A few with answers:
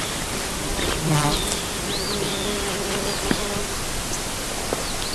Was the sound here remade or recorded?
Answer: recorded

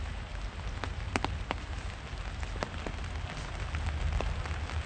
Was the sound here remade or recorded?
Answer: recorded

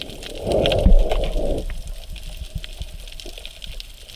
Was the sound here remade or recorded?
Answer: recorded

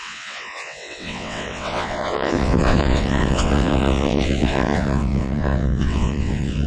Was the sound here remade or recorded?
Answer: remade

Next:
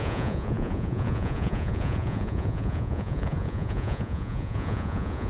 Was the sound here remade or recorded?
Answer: remade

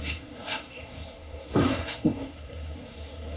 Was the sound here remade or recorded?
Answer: remade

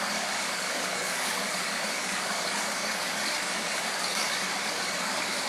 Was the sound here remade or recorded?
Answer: remade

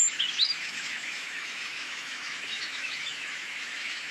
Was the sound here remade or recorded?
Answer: remade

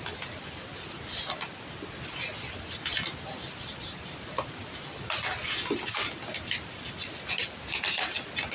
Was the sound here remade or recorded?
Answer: recorded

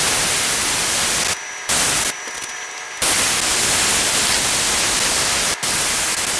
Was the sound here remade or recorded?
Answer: recorded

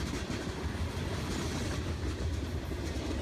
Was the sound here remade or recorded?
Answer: recorded